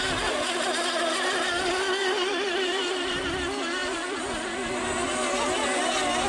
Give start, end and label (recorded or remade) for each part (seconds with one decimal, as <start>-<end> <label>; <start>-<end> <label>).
0.0-2.0 recorded; 2.0-3.2 remade; 3.2-3.8 recorded; 3.8-4.8 remade; 4.8-6.3 recorded